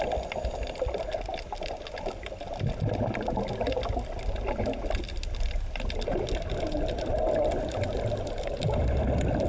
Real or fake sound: real